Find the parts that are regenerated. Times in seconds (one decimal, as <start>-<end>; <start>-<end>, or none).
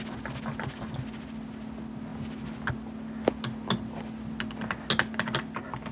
none